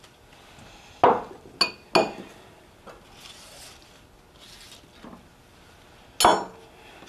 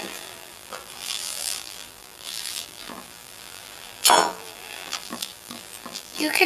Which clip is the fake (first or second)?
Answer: second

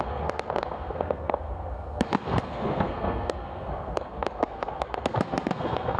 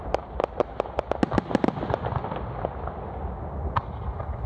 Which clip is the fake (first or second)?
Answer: first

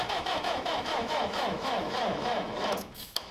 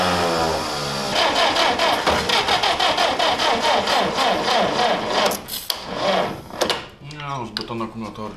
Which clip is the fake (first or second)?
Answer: first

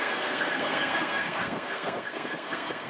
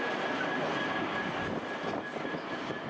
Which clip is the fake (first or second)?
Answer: first